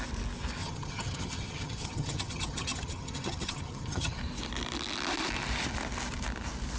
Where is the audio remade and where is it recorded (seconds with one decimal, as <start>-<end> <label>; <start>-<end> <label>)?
0.0-0.6 recorded; 0.6-4.2 remade; 4.2-6.8 recorded